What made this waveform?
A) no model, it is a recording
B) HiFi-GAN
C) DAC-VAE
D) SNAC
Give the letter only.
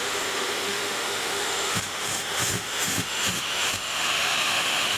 C